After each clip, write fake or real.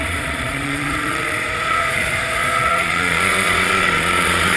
fake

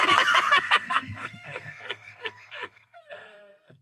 fake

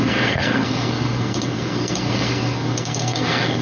fake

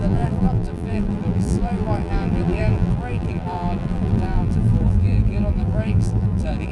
fake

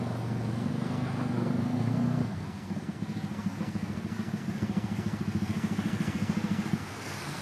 fake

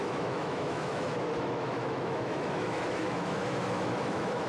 fake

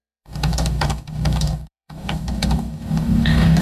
fake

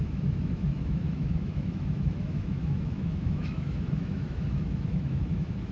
fake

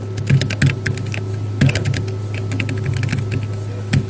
real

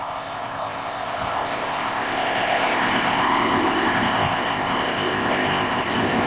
fake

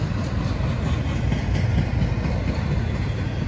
real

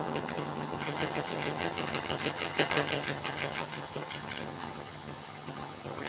fake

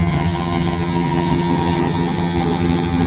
fake